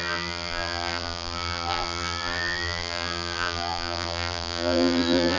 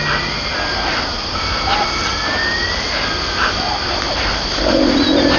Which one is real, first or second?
second